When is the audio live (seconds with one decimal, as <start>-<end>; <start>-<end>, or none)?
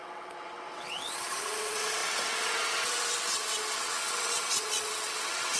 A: none